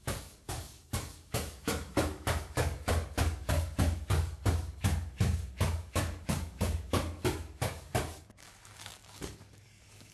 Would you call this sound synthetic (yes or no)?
yes